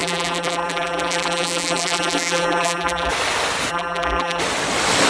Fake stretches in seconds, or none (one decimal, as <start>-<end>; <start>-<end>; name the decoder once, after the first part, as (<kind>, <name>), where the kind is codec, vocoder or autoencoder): 0.0-3.1 (vocoder, BigVGAN v2); 3.7-4.4